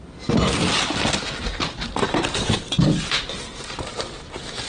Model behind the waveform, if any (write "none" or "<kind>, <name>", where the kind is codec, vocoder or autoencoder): none